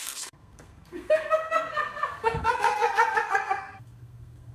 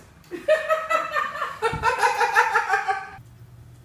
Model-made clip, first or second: first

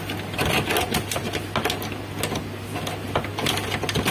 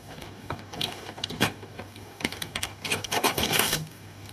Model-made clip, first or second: second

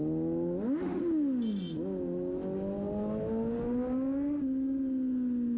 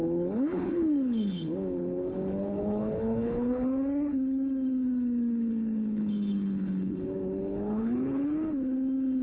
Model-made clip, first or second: second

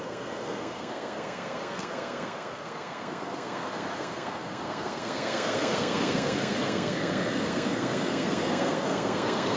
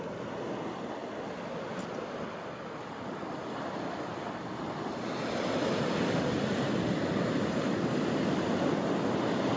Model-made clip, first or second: first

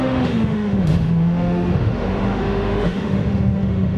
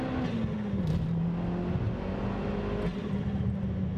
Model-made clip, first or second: first